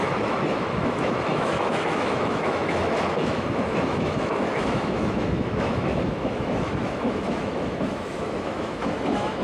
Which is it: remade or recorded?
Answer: remade